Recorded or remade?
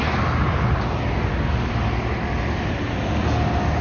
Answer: recorded